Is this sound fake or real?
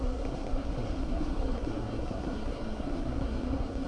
fake